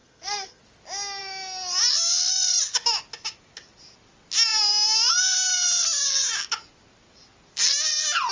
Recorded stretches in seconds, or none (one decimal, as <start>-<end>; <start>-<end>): 0.6-8.3